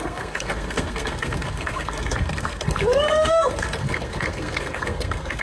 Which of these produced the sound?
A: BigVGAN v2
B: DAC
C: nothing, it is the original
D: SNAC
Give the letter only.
D